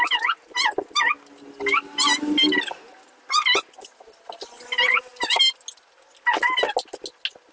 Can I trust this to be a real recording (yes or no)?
yes